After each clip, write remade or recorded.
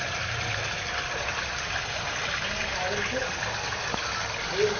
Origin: recorded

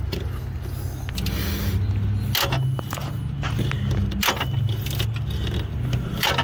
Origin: recorded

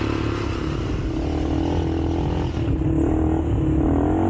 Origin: recorded